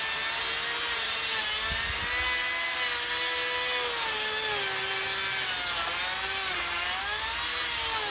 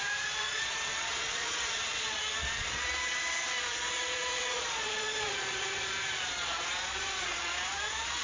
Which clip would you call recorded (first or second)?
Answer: first